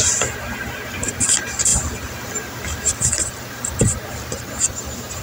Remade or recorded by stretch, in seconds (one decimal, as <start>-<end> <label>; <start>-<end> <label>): 0.0-5.2 recorded